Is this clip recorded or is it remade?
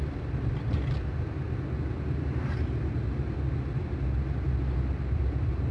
recorded